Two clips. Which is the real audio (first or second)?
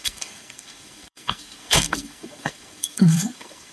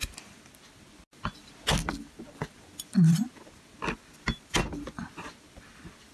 second